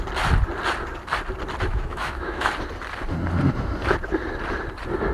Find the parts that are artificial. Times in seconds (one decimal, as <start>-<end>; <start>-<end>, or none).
1.7-2.5